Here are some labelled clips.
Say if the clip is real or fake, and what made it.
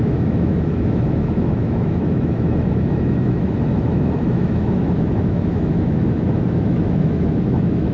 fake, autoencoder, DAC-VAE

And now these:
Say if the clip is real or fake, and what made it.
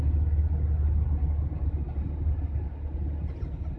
real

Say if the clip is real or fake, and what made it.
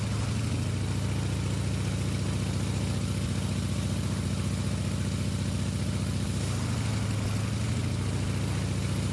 real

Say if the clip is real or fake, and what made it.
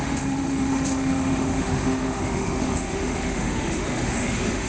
fake, autoencoder, DAC-VAE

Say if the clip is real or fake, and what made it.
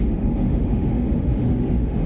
fake, autoencoder, DAC-VAE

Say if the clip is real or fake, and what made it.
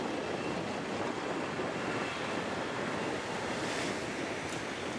real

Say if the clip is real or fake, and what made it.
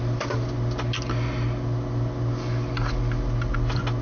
real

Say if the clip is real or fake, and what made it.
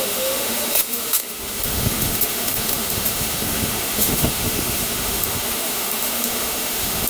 fake, autoencoder, DAC-VAE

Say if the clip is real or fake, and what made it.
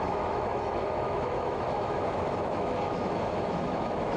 fake, autoencoder, DAC-VAE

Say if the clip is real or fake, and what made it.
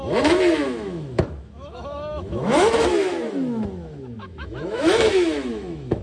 fake, autoencoder, DAC-VAE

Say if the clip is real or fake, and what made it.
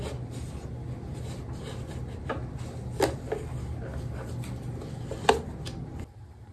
real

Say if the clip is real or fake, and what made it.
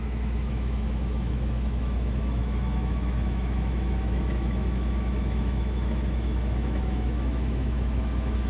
fake, autoencoder, DAC-VAE